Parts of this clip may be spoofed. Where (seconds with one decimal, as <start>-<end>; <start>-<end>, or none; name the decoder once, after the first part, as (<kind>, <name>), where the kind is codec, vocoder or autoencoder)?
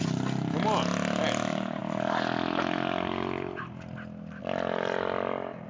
none